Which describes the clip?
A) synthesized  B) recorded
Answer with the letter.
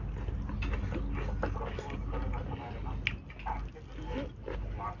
B